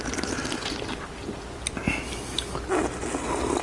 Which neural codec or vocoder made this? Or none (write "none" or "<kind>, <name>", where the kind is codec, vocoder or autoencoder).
none